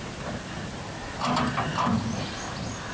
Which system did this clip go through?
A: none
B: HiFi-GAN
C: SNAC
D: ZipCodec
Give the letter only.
A